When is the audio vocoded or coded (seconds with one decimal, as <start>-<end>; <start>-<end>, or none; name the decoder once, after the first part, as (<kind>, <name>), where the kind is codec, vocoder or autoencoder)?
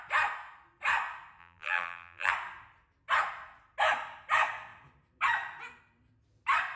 1.4-2.3 (vocoder, BigVGAN v2)